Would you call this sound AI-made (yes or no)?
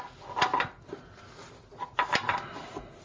no